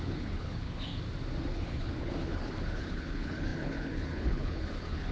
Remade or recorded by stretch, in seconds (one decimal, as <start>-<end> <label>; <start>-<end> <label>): 0.0-0.9 remade; 0.9-1.5 recorded; 1.5-5.1 remade